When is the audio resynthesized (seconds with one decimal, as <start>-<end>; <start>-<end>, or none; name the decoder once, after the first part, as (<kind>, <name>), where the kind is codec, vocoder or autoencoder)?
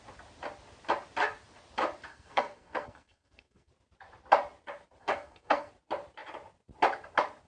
2.1-3.7 (codec, SNAC); 5.0-5.7